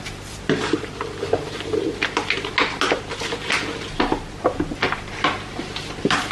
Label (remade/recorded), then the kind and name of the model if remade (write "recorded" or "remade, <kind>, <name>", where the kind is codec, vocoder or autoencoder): recorded